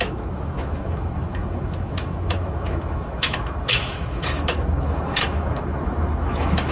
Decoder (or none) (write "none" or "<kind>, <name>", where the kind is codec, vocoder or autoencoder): autoencoder, DAC-VAE